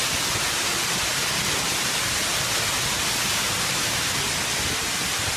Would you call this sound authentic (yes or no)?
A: yes